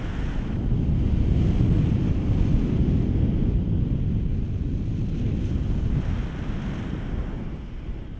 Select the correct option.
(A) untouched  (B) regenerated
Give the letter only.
A